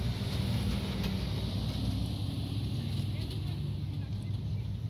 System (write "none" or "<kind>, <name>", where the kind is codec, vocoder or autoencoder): none